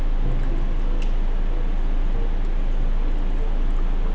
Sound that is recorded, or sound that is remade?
recorded